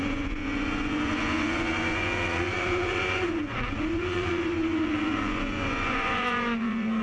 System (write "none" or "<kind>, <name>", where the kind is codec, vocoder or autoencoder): vocoder, Vocos